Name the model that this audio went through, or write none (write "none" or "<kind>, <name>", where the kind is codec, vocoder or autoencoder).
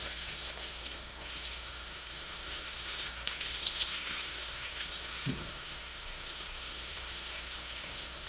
codec, SNAC